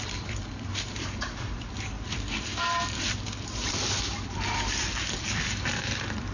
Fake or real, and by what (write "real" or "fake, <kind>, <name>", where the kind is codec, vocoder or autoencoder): fake, vocoder, BigVGAN v2